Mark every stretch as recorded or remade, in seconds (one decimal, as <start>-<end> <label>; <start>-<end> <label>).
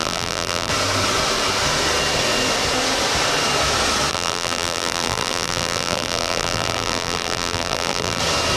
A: 0.0-0.7 remade; 0.7-4.1 recorded; 4.1-8.2 remade; 8.2-8.6 recorded